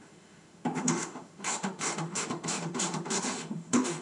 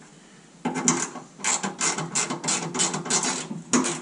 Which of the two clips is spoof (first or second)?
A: first